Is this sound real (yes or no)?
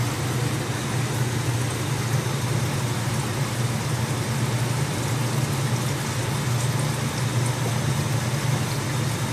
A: yes